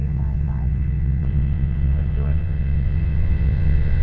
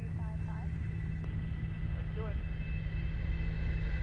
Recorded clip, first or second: second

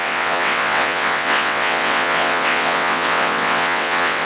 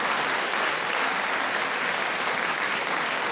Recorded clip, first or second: second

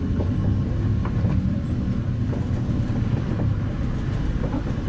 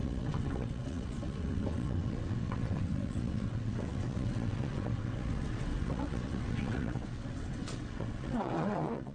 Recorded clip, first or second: first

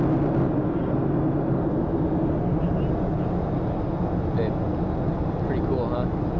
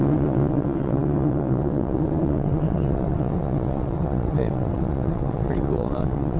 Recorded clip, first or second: first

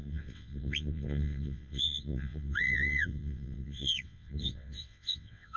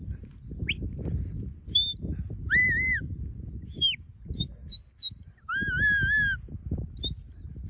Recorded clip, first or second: second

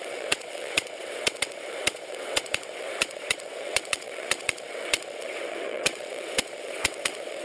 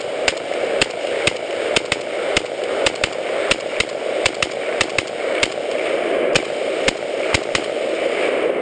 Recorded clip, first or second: second